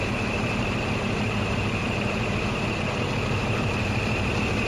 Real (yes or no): no